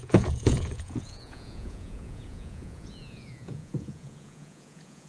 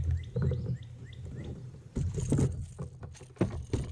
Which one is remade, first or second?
first